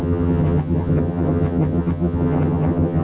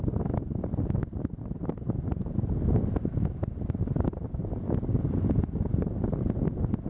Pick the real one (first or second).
second